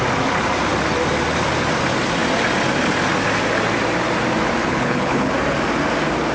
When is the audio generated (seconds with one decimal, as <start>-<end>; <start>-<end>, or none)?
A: 4.6-5.3